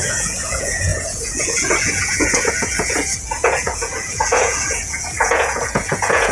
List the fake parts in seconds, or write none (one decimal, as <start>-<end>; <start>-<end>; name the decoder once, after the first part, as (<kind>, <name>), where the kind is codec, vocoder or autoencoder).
0.0-6.3 (vocoder, Vocos)